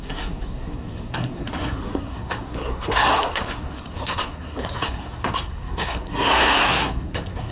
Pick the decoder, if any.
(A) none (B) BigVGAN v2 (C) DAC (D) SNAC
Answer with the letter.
D